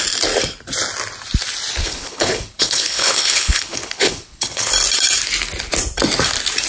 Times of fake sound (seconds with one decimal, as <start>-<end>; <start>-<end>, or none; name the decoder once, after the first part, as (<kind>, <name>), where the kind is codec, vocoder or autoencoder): 1.8-4.7 (codec, HILCodec)